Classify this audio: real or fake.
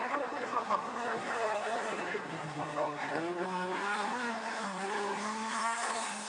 fake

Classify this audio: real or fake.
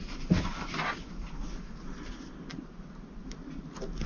real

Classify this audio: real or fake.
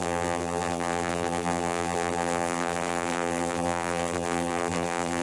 fake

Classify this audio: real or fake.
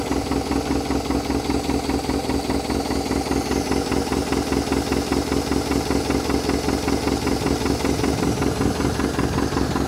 real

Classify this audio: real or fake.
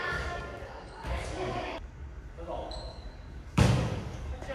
fake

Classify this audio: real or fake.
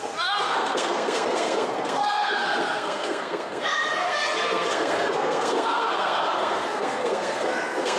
fake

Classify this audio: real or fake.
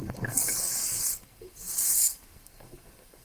fake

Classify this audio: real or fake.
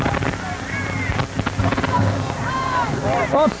real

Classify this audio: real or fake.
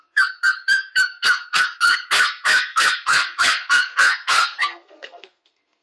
fake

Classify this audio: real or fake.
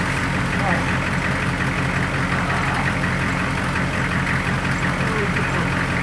real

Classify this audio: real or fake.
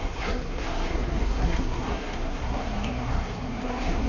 fake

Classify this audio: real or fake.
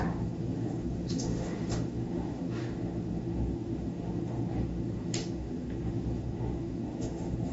fake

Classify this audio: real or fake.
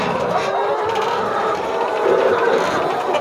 real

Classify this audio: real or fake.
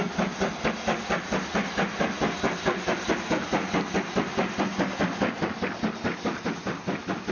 real